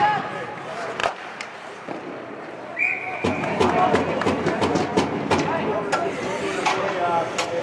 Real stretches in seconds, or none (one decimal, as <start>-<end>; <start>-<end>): 0.0-1.0; 2.6-3.1; 4.2-7.6